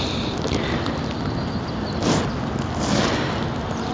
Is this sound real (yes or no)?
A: yes